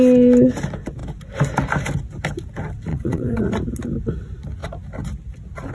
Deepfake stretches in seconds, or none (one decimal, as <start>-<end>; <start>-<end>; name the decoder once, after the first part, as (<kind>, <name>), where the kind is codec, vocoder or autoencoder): 2.9-3.4 (vocoder, WaveNeXt)